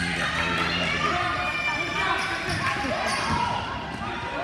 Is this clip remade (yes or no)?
no